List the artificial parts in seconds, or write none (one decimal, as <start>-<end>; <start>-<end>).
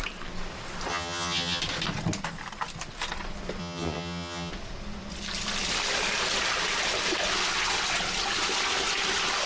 0.9-1.6; 3.6-4.5